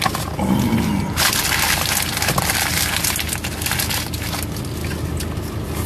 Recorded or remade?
recorded